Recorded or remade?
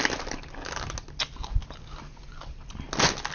recorded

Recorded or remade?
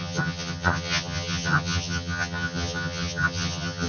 remade